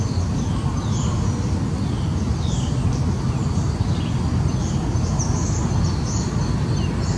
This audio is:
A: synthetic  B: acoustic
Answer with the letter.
B